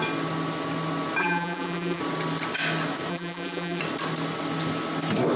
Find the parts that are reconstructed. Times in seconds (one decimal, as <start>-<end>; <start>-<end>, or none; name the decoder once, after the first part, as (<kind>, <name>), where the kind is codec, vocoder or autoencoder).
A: 1.2-2.0 (vocoder, BigVGAN v2); 3.1-3.8